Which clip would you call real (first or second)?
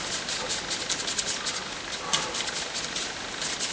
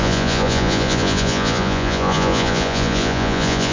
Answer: first